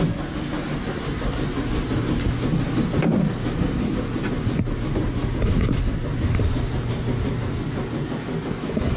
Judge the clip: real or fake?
real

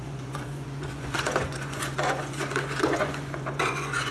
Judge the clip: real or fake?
fake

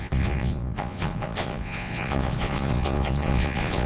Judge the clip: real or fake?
fake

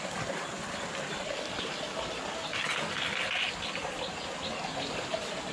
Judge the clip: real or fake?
real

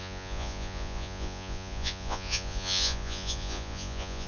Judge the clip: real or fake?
fake